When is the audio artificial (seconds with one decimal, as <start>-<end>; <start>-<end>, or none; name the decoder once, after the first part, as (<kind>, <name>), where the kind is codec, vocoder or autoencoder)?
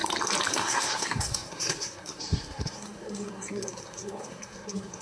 0.5-5.0 (codec, SNAC)